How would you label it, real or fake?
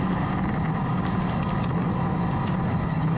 real